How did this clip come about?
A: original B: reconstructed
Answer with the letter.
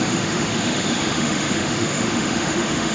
B